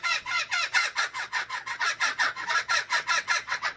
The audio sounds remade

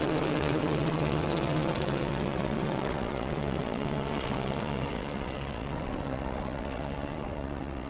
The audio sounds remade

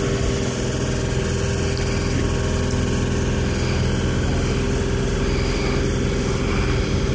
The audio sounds recorded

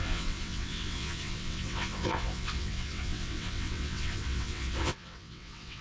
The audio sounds remade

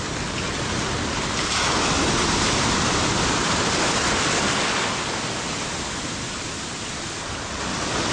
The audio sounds recorded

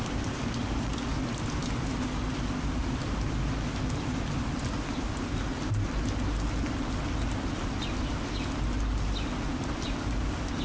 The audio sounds recorded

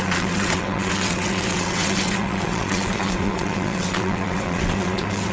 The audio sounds remade